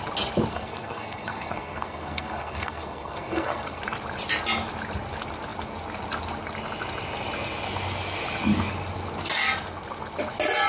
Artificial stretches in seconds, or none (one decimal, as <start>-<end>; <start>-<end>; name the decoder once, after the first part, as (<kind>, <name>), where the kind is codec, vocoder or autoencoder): 0.5-3.8 (codec, SNAC)